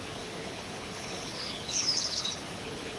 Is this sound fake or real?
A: fake